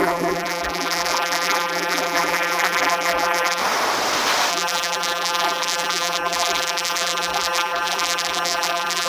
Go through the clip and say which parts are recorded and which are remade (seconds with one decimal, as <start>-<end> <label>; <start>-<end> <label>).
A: 0.0-3.6 remade; 3.6-4.5 recorded; 4.5-9.1 remade